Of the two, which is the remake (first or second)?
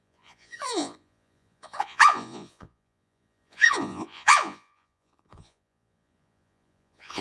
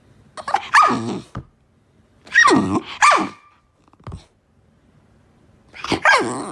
first